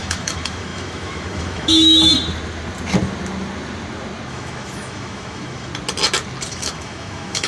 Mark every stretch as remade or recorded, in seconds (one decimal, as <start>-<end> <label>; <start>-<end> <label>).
0.0-2.1 remade; 2.1-4.3 recorded; 4.3-5.7 remade; 5.7-6.5 recorded; 6.5-7.5 remade